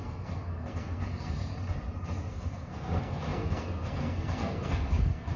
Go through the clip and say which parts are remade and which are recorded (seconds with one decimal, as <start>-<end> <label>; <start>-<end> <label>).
0.0-1.5 remade; 1.5-2.3 recorded; 2.3-5.4 remade

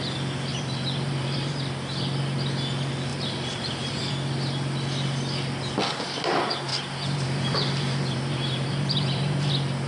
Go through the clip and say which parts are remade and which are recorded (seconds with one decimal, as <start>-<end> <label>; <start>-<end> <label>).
0.0-0.5 recorded; 0.5-1.6 remade; 1.6-3.1 recorded; 3.1-4.1 remade; 4.1-6.7 recorded; 6.7-9.5 remade; 9.5-9.9 recorded